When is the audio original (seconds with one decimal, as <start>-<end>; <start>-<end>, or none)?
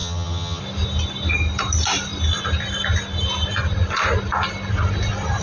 0.6-5.4